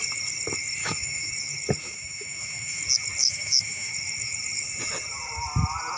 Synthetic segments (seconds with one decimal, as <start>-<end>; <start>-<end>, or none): 0.8-1.3; 1.8-2.8; 3.2-3.9